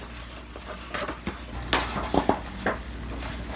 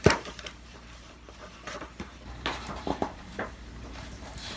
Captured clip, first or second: first